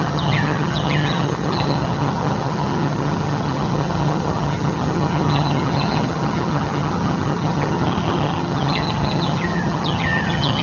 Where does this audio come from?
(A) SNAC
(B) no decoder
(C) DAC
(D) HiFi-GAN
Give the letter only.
D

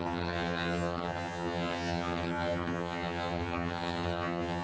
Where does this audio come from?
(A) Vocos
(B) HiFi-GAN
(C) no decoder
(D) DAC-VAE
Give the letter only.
B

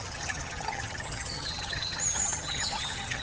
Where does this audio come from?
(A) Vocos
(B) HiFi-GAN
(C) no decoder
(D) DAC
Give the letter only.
B